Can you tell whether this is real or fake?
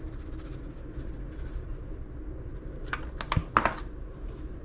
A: real